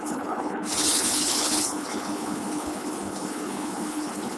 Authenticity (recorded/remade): remade